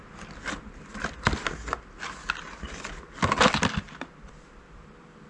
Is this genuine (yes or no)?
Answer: yes